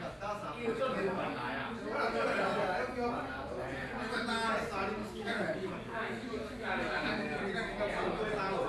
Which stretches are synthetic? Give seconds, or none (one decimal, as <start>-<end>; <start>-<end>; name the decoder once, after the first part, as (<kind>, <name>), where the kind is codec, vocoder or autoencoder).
0.6-1.7 (codec, DAC); 5.0-7.4